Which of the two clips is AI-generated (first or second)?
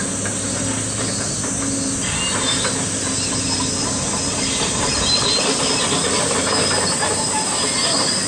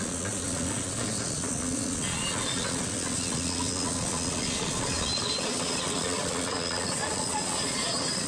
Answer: second